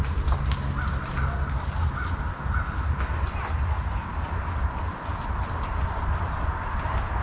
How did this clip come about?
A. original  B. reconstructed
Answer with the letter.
A